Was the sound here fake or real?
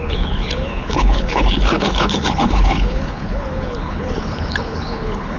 fake